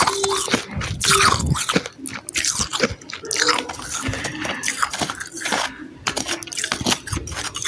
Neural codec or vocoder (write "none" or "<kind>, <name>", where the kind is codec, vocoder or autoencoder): none